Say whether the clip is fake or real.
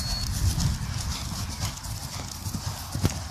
real